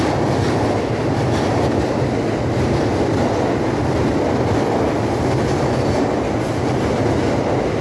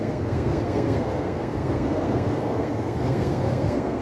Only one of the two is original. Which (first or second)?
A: first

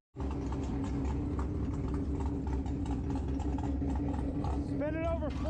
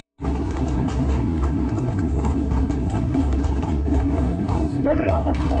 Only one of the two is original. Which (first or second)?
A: first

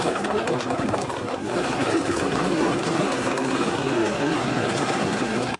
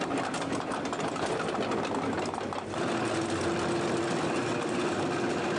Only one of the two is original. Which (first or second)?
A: second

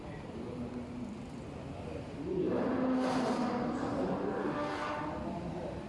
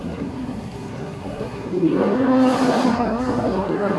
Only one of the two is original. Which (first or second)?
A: first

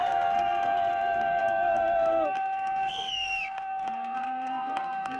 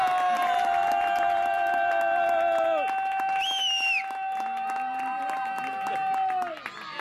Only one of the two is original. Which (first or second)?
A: second